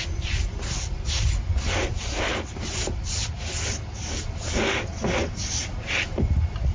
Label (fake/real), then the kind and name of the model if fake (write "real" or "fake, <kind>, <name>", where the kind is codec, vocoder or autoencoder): real